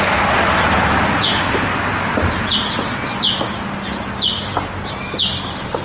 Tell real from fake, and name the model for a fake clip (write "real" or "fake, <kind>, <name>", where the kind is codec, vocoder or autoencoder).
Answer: real